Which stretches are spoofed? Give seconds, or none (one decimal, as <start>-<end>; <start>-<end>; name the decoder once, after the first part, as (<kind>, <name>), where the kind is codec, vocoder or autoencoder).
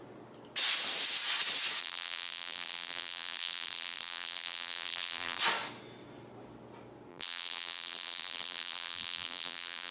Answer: 1.8-5.4 (vocoder, BigVGAN v2); 7.1-9.9